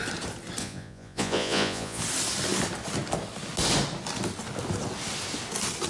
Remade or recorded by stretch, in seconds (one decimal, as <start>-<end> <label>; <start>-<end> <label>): 0.0-0.6 recorded; 0.6-2.0 remade; 2.0-5.9 recorded